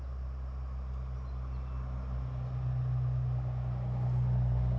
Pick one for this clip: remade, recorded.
recorded